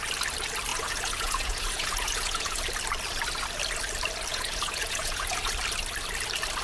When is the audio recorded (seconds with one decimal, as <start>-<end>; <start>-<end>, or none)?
0.0-0.7; 2.6-4.3; 5.5-6.6